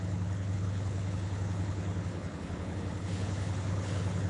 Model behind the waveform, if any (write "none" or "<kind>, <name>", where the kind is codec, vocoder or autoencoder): codec, HILCodec